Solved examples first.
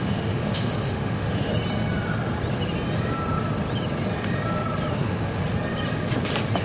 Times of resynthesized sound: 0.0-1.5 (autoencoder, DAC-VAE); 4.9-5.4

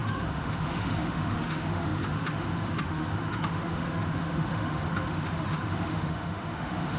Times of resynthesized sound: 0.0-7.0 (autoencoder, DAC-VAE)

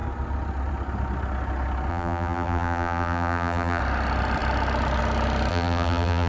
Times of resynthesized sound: 1.9-3.8 (vocoder, BigVGAN v2); 5.5-6.3

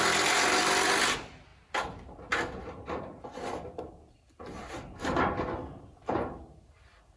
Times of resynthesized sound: none